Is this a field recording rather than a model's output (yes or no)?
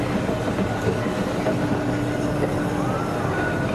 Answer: yes